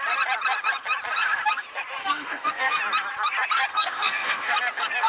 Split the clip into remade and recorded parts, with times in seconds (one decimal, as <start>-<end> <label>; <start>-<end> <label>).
0.0-2.0 recorded; 2.0-2.8 remade; 2.8-3.7 recorded; 3.7-4.5 remade; 4.5-5.1 recorded